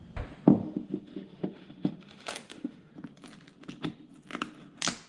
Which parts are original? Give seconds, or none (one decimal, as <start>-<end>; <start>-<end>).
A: 0.0-0.6; 2.9-5.1